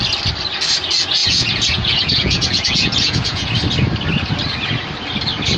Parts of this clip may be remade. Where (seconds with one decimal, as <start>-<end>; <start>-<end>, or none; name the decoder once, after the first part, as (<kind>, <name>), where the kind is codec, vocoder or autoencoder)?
1.2-3.5 (vocoder, Vocos)